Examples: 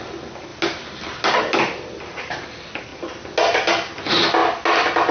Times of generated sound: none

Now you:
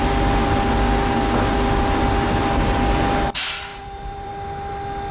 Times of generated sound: 3.7-4.3 (vocoder, BigVGAN v2)

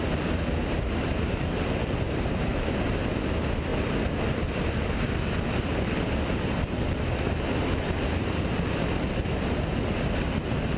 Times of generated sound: 0.6-2.5 (vocoder, BigVGAN v2)

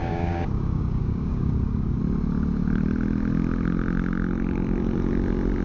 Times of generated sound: 0.0-2.0 (codec, DAC)

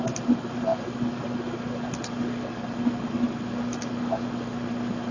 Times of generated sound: none